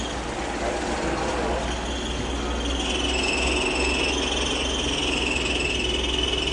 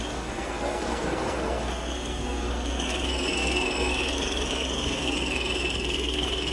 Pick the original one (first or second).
first